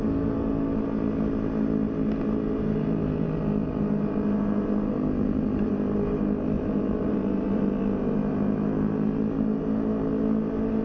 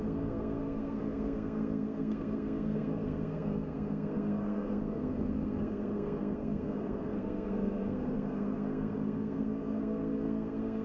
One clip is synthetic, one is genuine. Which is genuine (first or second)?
first